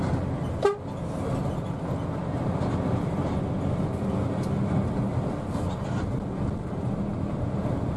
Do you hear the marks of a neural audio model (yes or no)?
no